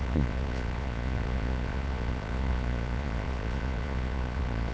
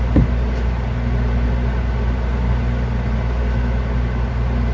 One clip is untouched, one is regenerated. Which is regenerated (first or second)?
first